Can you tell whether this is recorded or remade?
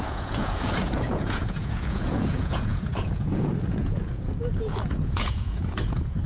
remade